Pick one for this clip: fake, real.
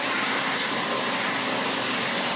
real